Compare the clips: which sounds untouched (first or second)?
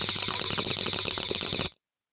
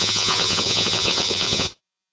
first